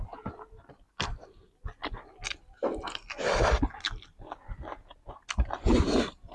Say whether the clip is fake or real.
real